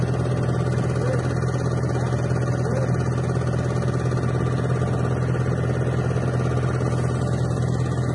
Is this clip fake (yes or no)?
no